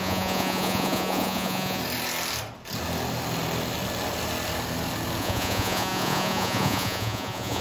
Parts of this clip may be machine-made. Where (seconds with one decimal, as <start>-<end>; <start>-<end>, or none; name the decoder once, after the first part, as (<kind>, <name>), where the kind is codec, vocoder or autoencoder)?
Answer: 0.0-1.8 (vocoder, Vocos); 5.2-7.6